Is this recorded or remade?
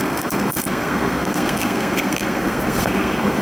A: remade